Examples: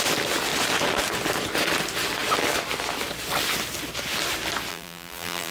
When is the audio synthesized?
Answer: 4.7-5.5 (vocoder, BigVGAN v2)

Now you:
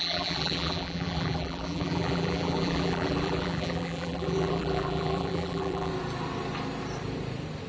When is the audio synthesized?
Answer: 0.0-5.9 (vocoder, BigVGAN v2)

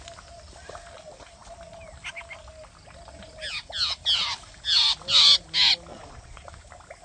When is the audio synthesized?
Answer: 5.9-6.6 (vocoder, Vocos)

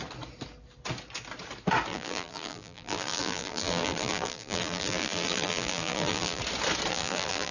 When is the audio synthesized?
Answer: 1.9-6.4 (vocoder, BigVGAN v2); 6.9-7.5

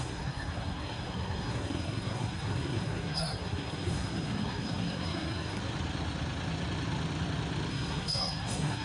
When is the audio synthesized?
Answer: 0.0-5.6 (codec, SNAC); 7.7-8.8

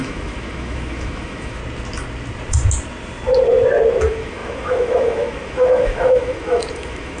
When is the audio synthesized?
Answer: 0.0-1.6 (autoencoder, DAC-VAE); 4.0-7.2